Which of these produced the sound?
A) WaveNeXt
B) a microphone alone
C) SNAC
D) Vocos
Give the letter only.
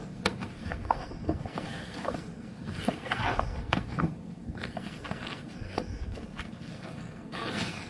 C